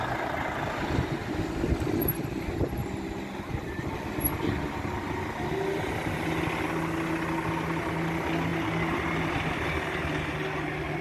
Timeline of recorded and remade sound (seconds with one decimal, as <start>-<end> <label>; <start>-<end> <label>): 0.0-11.0 recorded